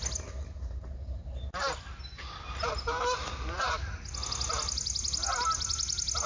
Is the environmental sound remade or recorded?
recorded